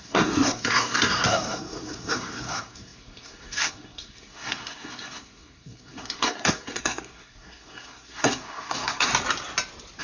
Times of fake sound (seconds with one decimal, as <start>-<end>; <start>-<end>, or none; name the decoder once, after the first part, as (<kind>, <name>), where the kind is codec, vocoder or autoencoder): 0.0-9.1 (codec, SNAC)